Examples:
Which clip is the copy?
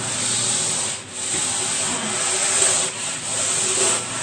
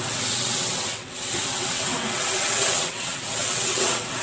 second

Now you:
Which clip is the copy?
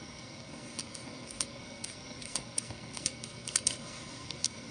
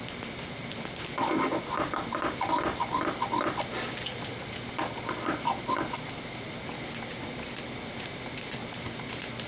first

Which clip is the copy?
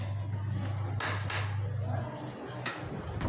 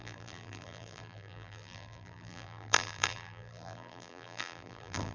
second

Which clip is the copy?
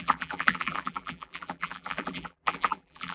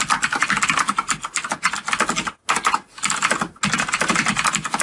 first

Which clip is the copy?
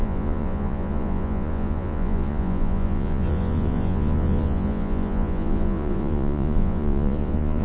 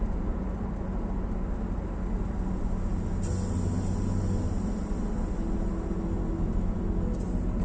first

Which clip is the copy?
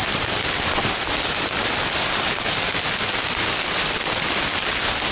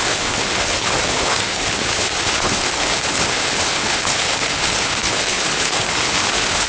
second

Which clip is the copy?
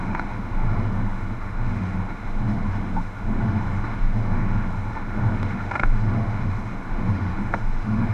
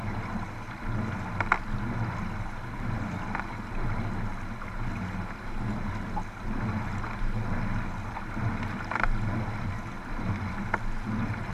first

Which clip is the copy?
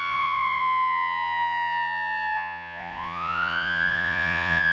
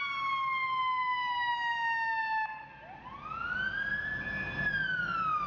first